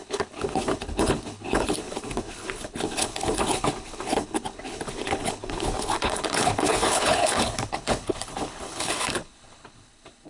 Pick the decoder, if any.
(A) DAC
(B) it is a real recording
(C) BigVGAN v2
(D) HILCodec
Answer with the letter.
D